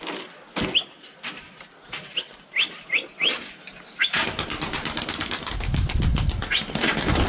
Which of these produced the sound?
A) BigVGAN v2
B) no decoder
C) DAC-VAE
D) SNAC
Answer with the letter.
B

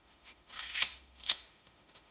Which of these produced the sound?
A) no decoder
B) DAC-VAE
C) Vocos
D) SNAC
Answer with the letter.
B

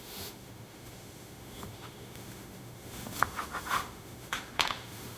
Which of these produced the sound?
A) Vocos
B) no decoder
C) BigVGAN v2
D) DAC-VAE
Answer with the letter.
D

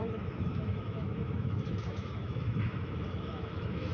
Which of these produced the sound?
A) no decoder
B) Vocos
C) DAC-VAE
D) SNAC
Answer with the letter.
C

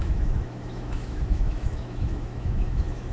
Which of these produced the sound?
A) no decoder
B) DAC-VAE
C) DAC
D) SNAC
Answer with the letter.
B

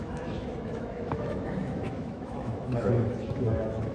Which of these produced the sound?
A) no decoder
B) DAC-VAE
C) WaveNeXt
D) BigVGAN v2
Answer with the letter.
B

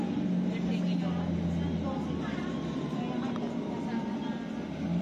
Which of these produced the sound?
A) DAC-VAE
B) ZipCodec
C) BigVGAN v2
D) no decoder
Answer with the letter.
D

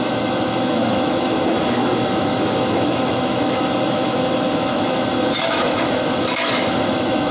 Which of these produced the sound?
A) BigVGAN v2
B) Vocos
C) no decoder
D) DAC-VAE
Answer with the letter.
D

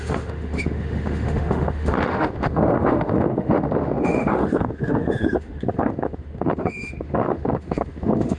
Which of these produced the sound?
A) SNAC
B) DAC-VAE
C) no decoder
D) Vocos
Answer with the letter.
B